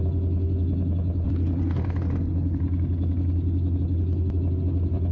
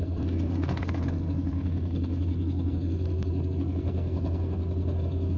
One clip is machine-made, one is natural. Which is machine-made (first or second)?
second